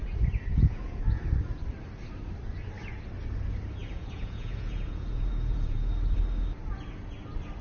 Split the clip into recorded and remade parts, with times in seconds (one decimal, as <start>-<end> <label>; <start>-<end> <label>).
0.0-0.5 recorded; 0.5-1.0 remade; 1.0-3.8 recorded; 3.8-5.9 remade; 5.9-7.6 recorded